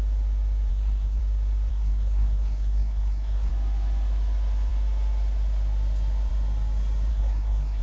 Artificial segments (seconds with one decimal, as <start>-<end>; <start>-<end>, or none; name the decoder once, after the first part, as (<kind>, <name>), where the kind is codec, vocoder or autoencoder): 0.7-1.2 (codec, SNAC); 1.7-3.5; 7.1-7.8